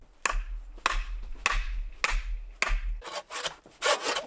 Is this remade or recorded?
recorded